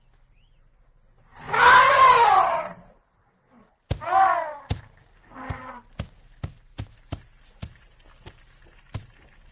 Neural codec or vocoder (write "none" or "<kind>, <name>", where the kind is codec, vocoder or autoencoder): none